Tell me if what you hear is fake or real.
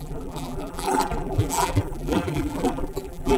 fake